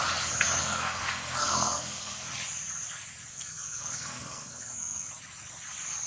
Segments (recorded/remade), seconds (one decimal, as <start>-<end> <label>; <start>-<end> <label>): 0.0-0.6 recorded; 0.6-2.3 remade; 2.3-3.3 recorded; 3.3-5.1 remade; 5.1-6.1 recorded